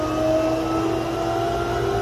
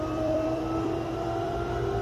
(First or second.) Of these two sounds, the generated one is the second